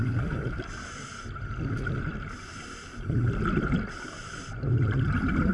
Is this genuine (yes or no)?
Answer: yes